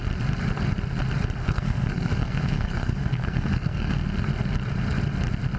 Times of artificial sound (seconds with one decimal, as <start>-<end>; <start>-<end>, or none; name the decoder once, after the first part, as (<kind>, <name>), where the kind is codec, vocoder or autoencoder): 1.4-3.9 (codec, SNAC)

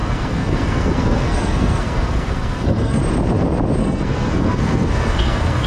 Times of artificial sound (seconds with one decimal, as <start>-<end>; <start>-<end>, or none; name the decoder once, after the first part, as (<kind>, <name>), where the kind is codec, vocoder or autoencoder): 0.0-3.0 (codec, SNAC); 3.8-5.7

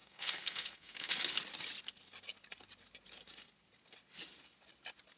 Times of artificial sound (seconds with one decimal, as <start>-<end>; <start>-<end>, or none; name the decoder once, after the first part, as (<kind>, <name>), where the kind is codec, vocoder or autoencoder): 0.0-1.1 (codec, SNAC)

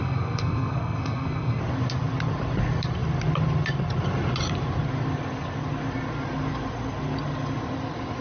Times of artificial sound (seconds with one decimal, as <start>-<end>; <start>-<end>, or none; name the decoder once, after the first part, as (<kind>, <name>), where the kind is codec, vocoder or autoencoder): 0.0-1.6 (codec, SNAC)

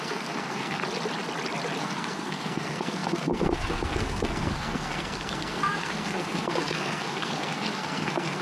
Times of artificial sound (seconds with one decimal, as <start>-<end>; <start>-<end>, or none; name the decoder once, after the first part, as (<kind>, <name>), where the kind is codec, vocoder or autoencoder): 0.0-0.8 (codec, SNAC); 1.8-8.4

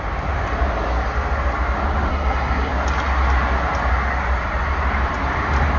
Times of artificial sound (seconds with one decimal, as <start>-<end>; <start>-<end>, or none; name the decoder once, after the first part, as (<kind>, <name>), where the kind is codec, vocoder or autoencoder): 2.1-2.7 (codec, SNAC)